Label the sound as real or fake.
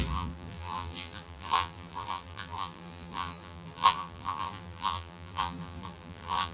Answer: fake